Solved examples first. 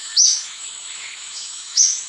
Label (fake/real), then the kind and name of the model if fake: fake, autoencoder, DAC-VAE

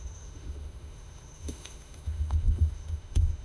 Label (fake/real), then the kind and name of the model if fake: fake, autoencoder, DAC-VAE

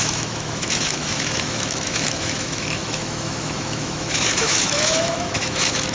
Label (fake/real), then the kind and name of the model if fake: fake, autoencoder, DAC-VAE